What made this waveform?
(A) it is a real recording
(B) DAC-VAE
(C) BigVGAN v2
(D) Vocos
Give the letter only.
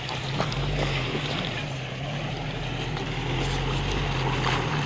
A